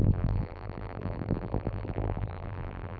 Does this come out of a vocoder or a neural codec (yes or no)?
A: yes